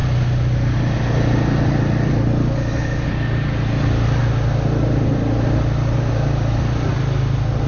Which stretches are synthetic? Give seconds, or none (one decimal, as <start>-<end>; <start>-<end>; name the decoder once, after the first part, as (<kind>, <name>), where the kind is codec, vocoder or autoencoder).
none